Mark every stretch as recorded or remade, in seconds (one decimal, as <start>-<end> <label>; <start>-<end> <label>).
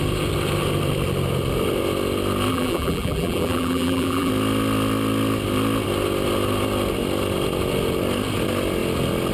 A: 0.0-2.5 recorded; 2.5-4.3 remade; 4.3-9.3 recorded